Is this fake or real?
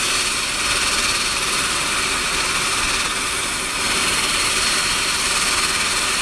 real